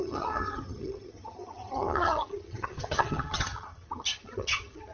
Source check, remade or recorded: remade